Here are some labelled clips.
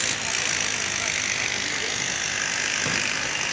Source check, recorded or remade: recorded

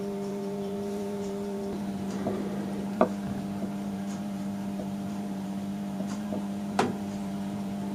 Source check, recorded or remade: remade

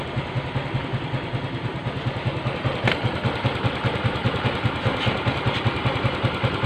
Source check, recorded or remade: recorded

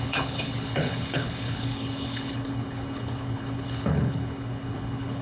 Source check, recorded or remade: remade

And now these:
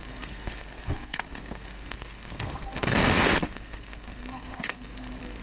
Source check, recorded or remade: remade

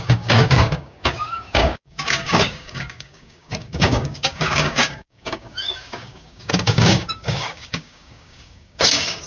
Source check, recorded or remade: remade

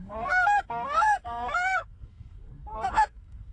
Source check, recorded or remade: remade